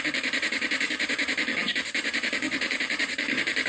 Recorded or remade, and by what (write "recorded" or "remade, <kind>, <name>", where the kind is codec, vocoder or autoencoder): remade, vocoder, BigVGAN v2